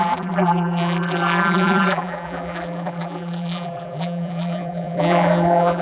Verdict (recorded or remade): remade